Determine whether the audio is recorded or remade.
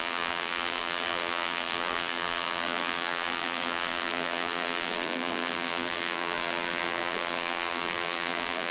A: remade